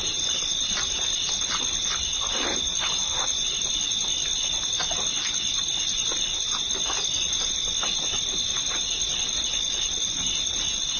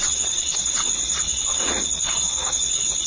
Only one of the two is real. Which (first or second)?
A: first